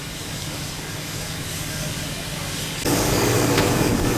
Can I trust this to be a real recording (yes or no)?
no